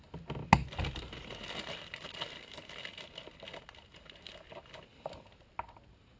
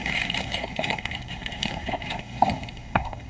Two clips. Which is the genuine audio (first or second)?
first